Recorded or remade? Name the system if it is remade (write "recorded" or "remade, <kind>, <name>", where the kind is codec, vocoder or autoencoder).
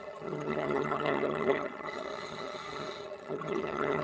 remade, vocoder, HiFi-GAN